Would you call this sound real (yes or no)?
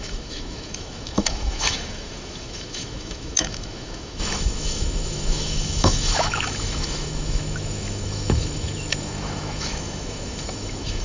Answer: no